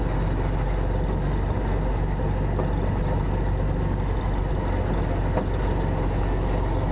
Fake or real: real